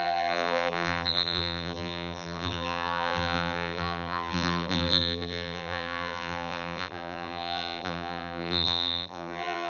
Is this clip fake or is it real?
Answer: fake